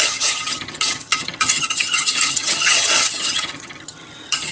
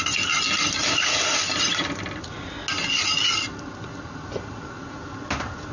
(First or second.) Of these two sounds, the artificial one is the first